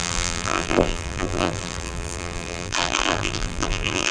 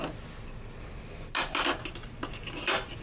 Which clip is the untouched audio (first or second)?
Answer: second